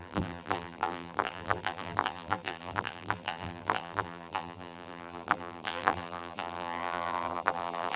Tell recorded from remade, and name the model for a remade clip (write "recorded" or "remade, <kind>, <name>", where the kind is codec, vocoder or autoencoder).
remade, vocoder, BigVGAN v2